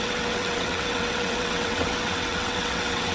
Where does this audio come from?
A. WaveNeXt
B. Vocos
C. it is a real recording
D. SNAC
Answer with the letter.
A